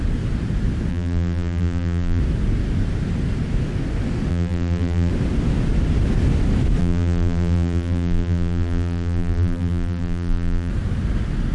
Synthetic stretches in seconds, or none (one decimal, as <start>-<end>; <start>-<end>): 0.9-2.2; 4.3-5.1; 6.8-10.7